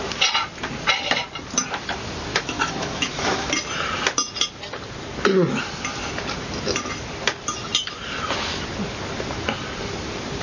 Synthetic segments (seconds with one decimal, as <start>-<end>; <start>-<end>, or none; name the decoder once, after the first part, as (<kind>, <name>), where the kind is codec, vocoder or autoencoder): 2.3-3.5 (autoencoder, DAC-VAE)